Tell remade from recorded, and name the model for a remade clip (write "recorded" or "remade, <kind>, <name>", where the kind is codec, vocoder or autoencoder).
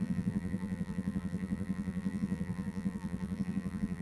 remade, vocoder, BigVGAN v2